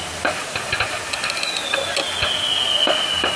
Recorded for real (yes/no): yes